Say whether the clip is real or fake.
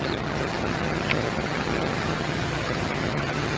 fake